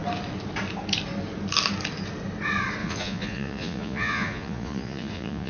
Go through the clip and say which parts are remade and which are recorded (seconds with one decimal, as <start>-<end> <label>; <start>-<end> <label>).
0.0-2.8 recorded; 2.8-5.5 remade